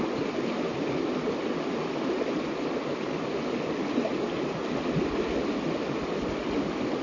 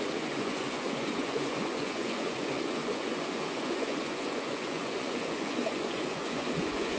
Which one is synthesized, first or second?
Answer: second